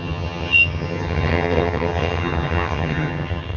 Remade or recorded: remade